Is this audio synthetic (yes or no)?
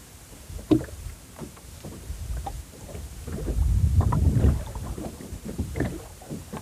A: yes